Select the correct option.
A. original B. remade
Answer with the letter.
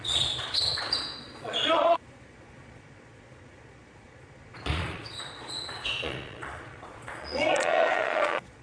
B